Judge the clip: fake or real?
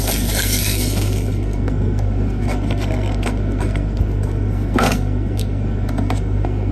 fake